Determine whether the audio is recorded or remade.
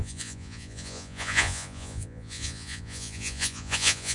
remade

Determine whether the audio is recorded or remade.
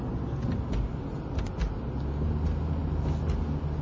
recorded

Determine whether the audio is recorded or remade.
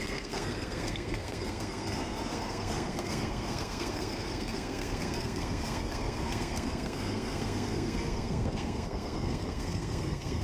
remade